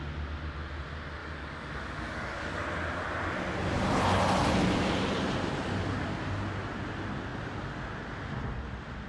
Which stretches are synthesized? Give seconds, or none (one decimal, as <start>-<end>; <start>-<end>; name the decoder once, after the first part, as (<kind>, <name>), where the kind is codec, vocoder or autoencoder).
1.2-2.6 (codec, DAC)